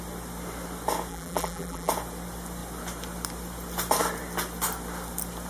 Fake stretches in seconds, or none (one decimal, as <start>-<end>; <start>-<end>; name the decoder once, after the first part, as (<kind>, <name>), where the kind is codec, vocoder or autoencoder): 1.1-1.9 (vocoder, BigVGAN v2)